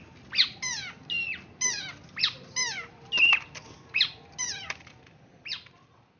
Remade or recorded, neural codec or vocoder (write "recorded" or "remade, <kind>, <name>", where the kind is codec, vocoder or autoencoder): recorded